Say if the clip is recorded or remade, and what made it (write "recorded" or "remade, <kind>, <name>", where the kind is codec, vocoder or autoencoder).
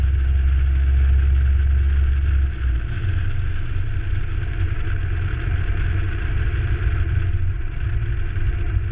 recorded